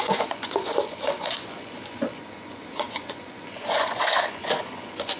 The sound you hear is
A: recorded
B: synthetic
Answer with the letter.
B